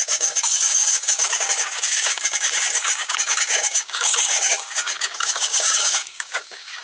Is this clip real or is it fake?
fake